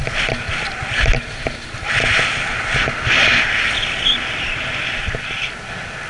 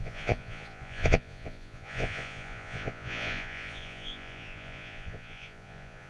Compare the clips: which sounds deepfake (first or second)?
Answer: second